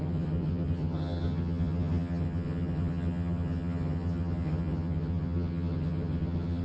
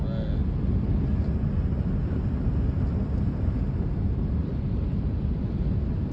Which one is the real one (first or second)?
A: second